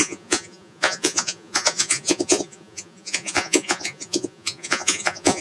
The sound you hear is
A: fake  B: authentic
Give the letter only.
A